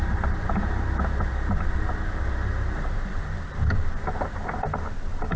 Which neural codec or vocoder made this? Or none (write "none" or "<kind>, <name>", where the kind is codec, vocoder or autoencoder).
none